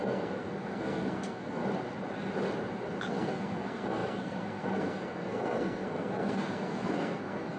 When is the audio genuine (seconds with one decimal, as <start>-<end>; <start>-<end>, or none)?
1.6-3.1